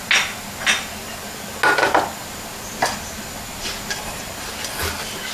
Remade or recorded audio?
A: recorded